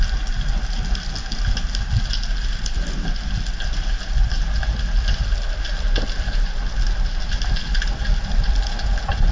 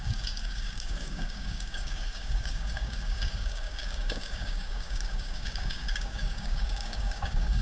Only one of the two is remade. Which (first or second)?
second